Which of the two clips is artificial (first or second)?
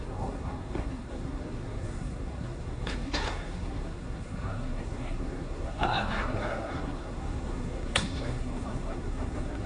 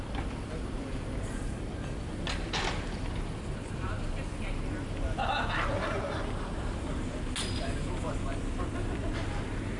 first